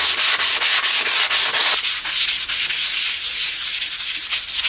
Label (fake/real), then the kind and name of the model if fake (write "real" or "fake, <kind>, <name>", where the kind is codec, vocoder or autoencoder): real